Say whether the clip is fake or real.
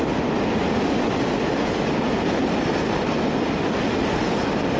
real